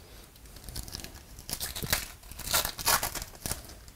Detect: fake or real real